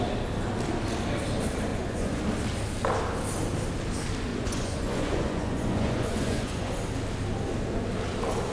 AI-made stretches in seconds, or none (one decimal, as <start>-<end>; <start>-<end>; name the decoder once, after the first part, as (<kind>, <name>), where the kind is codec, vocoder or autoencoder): 1.7-2.2 (vocoder, Vocos); 4.3-6.7